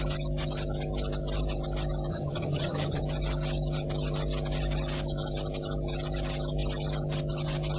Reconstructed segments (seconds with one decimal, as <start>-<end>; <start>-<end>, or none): 2.1-3.0